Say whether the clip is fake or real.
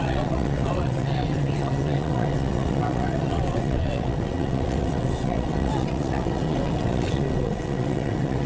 fake